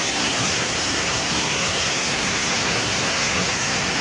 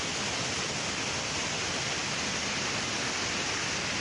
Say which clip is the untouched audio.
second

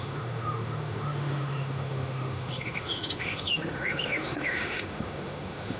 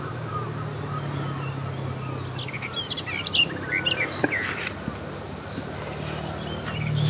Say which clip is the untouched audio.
second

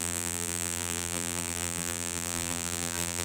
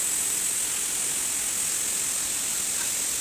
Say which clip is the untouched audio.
second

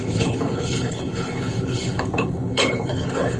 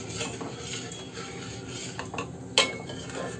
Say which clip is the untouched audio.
second